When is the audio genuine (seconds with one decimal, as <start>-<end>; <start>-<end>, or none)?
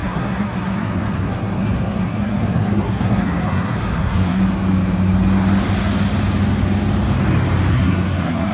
4.4-7.7